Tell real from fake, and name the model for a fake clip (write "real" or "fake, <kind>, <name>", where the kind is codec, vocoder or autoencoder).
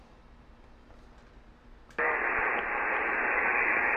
real